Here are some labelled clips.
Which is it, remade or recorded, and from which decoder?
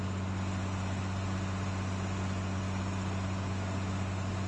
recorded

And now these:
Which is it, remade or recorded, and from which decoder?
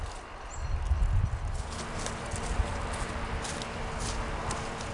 recorded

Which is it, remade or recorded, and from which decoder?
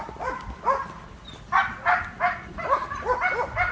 recorded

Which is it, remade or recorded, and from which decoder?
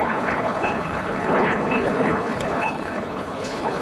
remade, codec, HILCodec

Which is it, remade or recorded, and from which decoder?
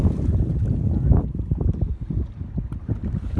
recorded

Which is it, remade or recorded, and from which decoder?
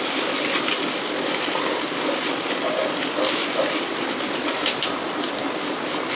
recorded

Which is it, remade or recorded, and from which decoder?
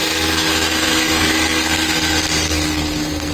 remade, codec, SNAC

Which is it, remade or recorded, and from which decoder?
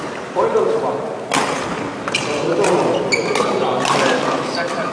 recorded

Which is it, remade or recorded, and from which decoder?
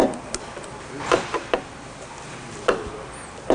recorded